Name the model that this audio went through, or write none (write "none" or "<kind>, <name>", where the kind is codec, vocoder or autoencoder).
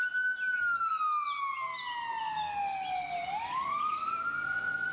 none